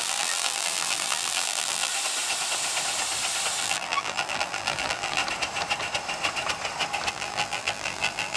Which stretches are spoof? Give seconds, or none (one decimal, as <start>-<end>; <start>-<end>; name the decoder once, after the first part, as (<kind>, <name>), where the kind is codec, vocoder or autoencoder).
0.0-1.9 (vocoder, BigVGAN v2); 3.6-5.2; 7.1-8.4